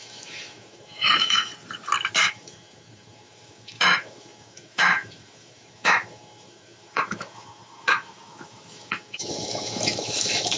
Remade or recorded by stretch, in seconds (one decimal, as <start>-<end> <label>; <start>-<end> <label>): 0.0-1.5 remade; 1.5-2.3 recorded; 2.3-10.6 remade